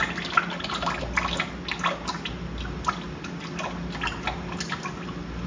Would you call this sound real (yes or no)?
yes